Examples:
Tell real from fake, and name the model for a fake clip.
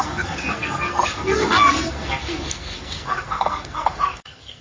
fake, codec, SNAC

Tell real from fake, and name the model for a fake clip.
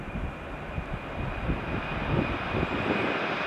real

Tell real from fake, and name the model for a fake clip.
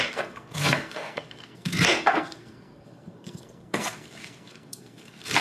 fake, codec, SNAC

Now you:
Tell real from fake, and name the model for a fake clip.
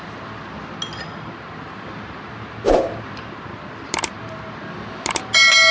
real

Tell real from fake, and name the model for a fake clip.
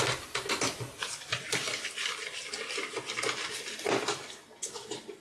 real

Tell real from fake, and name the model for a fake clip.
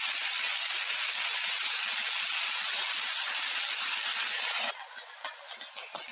real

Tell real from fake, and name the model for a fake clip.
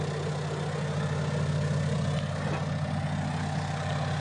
real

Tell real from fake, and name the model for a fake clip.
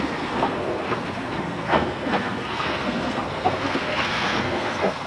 fake, codec, SNAC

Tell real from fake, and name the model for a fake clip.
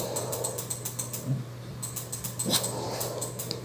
real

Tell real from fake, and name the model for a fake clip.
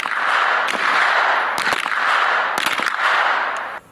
real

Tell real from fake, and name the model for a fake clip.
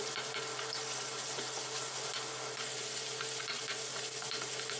real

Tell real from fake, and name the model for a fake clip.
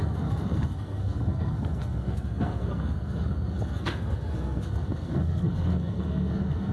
fake, codec, SNAC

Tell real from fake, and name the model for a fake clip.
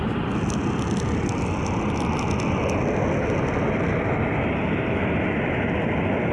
real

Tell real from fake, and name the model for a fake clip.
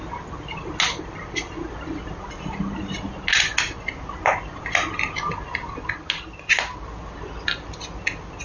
real